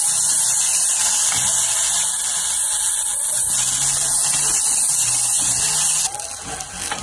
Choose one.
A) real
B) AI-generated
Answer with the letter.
A